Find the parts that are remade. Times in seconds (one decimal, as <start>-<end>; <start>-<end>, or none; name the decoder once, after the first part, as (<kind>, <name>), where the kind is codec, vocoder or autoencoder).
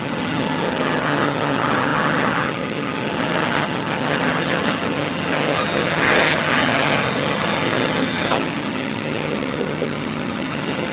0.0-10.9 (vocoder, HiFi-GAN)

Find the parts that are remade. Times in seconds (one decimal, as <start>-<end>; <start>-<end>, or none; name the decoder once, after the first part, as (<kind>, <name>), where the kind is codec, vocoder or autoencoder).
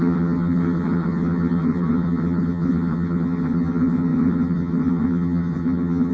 0.0-6.1 (vocoder, HiFi-GAN)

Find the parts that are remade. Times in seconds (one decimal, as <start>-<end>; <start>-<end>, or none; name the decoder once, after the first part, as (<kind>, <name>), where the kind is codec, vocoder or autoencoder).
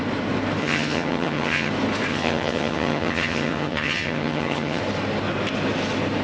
0.6-1.7 (vocoder, HiFi-GAN); 2.1-4.8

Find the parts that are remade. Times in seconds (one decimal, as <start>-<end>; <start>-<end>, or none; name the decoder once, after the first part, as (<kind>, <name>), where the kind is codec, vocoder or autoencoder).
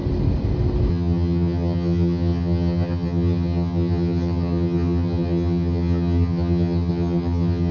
0.9-7.7 (vocoder, HiFi-GAN)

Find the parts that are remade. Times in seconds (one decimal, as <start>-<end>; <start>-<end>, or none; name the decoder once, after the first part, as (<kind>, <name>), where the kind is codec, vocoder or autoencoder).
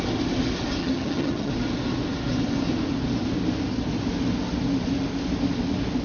0.8-1.5 (vocoder, HiFi-GAN)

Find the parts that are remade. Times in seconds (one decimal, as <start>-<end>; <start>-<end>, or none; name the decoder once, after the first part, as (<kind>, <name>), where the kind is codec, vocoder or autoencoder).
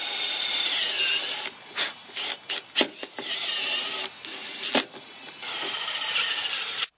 none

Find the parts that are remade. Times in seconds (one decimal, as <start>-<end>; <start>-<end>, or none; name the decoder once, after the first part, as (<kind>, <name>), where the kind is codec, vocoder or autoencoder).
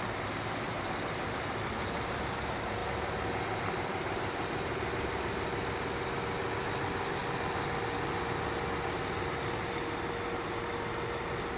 none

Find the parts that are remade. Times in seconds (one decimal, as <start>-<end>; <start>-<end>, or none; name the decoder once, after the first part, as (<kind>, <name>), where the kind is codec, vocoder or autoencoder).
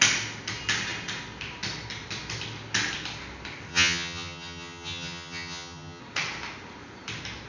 3.7-6.0 (vocoder, HiFi-GAN)